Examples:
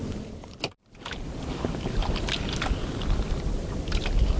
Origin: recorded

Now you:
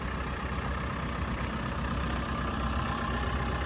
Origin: recorded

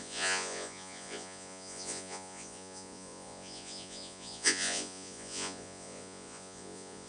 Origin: remade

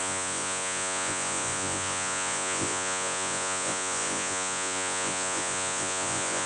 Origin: remade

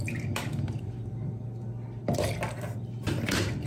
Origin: recorded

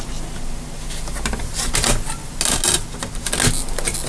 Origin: recorded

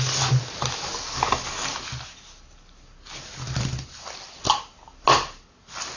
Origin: recorded